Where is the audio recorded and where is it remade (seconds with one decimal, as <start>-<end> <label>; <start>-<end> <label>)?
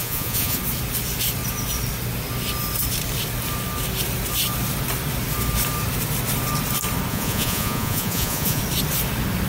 0.0-0.6 remade; 0.6-7.1 recorded; 7.1-8.6 remade; 8.6-9.5 recorded